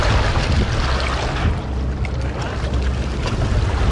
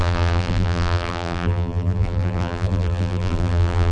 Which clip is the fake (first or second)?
second